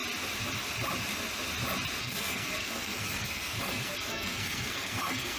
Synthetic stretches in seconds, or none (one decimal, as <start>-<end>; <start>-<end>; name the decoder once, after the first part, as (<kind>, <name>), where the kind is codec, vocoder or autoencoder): 2.0-5.4 (codec, SNAC)